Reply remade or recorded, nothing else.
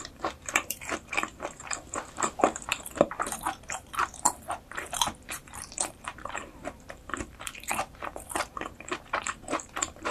remade